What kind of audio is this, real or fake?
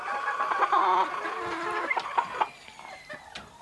real